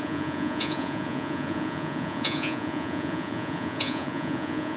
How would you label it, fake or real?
fake